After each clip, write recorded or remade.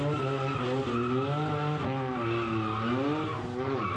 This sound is recorded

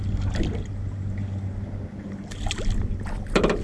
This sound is recorded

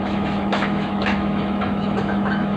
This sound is remade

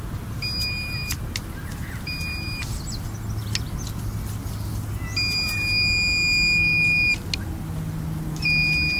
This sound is recorded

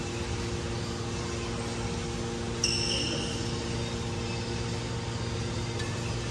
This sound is recorded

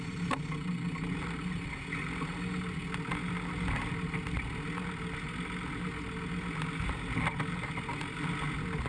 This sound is recorded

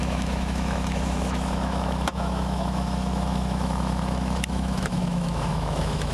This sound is remade